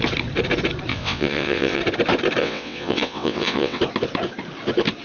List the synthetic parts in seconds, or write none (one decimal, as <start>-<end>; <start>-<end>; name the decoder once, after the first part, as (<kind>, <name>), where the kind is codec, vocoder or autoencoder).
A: 0.9-1.8 (vocoder, WaveNeXt); 2.4-3.8